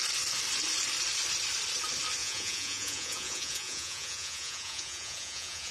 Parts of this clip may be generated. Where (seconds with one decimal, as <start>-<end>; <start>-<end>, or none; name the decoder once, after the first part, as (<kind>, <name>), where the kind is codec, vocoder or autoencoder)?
2.2-5.7 (vocoder, Vocos)